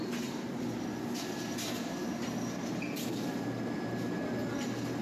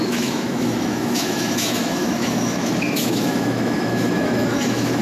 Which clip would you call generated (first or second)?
second